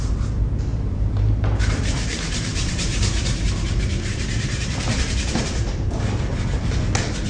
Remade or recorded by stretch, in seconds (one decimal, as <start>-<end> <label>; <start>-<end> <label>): 0.0-0.7 recorded; 0.7-1.6 remade; 1.6-2.5 recorded; 2.5-6.3 remade; 6.3-7.3 recorded